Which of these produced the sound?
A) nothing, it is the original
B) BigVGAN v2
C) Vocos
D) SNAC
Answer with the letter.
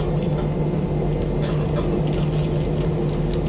A